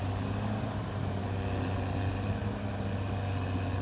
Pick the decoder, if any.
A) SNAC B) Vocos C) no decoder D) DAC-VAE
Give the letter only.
C